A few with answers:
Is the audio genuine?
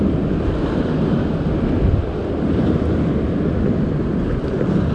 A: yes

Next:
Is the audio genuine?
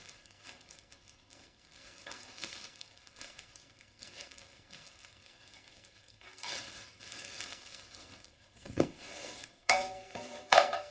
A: no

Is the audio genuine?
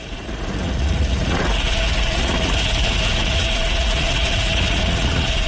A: no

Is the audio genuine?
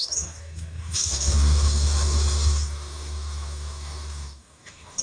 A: no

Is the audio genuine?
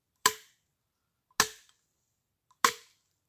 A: yes